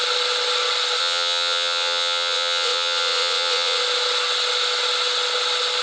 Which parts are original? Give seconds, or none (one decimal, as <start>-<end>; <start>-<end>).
0.0-1.0; 3.8-5.8